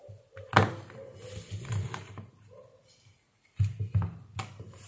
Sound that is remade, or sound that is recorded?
recorded